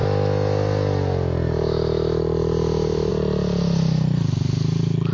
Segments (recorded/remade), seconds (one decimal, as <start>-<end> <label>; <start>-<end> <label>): 0.0-5.1 recorded

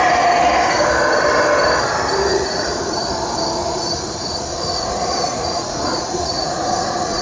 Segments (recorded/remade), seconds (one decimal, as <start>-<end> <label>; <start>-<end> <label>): 0.0-2.3 recorded; 2.3-3.0 remade; 3.0-3.6 recorded; 3.6-7.2 remade

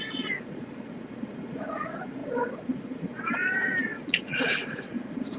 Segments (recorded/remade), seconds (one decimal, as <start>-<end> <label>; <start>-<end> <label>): 0.0-5.4 remade

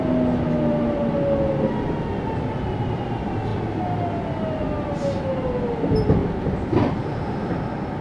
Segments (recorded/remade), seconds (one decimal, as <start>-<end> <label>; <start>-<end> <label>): 0.0-8.0 recorded

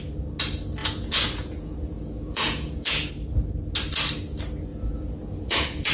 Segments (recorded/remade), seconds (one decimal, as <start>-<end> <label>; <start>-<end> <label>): 0.0-0.8 recorded; 0.8-3.1 remade; 3.1-4.7 recorded; 4.7-5.9 remade

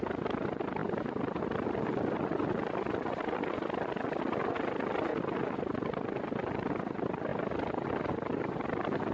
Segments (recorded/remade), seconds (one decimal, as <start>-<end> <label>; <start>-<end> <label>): 0.0-9.1 recorded

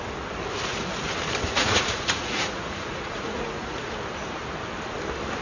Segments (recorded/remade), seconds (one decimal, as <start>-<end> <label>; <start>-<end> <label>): 0.0-1.5 recorded; 1.5-3.9 remade; 3.9-5.4 recorded

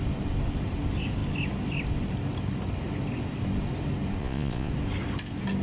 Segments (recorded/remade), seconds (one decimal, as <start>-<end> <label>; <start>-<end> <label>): 0.0-4.2 recorded; 4.2-4.7 remade; 4.7-5.6 recorded